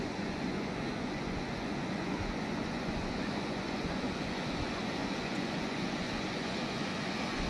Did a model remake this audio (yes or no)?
yes